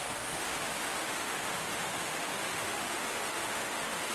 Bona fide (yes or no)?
no